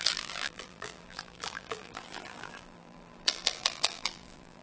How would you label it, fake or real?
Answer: fake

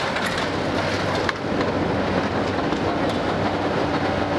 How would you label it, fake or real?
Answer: real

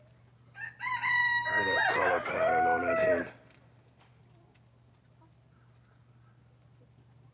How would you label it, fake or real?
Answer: real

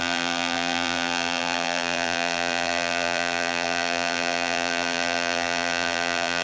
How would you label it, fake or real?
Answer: fake